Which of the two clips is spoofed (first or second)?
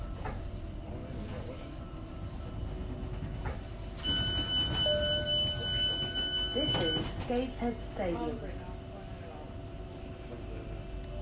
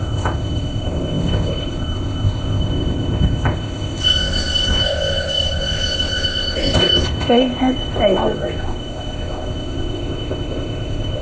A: second